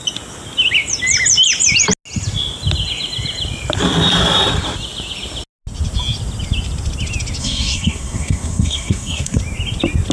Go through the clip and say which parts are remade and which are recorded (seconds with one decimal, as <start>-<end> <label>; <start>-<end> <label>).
0.0-7.4 recorded; 7.4-9.4 remade; 9.4-10.1 recorded